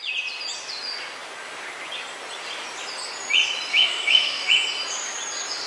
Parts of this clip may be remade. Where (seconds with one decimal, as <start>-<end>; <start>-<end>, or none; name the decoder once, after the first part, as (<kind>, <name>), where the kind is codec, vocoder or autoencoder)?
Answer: 3.7-4.5 (autoencoder, DAC-VAE)